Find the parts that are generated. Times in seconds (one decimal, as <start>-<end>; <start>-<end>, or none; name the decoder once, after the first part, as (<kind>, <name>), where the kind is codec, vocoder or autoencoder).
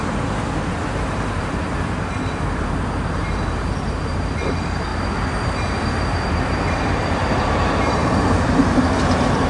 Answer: 0.0-4.9 (vocoder, BigVGAN v2); 5.9-9.5